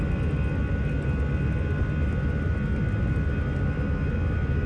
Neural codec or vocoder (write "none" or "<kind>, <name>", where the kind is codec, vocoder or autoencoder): none